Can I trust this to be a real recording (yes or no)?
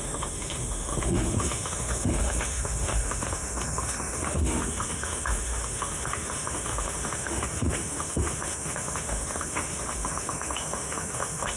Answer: no